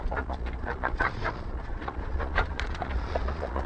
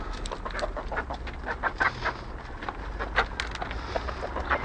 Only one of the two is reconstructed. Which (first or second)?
first